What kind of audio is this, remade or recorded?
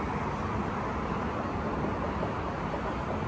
recorded